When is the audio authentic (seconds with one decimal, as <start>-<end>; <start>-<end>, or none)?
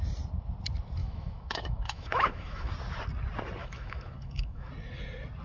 0.0-1.0; 2.7-3.6; 4.7-5.4